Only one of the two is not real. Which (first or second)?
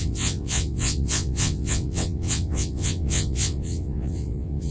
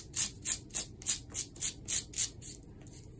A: first